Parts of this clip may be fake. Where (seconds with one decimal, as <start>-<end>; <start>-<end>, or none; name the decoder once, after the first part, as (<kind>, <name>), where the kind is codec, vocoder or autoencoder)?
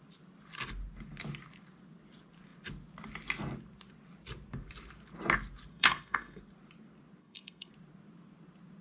5.7-6.4 (codec, SNAC); 7.2-7.7